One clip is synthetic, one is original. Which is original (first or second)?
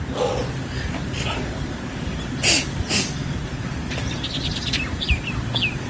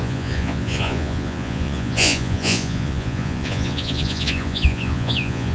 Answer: first